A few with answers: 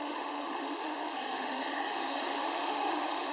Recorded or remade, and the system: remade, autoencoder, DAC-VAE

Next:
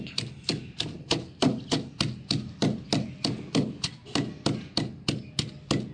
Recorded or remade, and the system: recorded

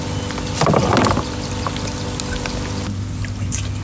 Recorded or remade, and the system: recorded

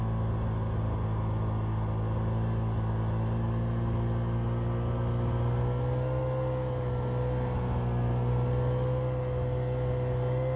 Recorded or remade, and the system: recorded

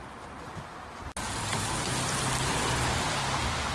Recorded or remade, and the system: recorded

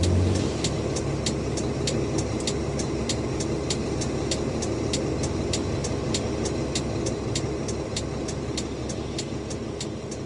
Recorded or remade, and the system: recorded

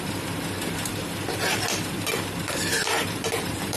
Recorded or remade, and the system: remade, vocoder, BigVGAN v2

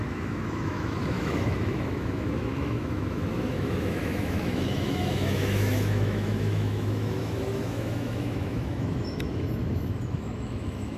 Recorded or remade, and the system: remade, autoencoder, DAC-VAE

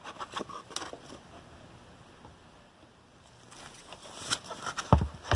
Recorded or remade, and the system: recorded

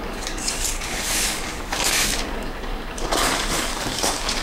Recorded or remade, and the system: remade, codec, DAC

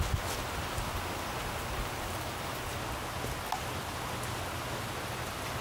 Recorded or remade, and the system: recorded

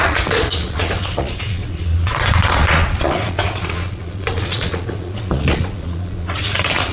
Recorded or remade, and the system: remade, vocoder, Vocos